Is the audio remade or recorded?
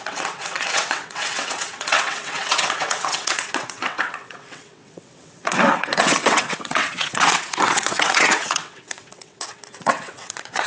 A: remade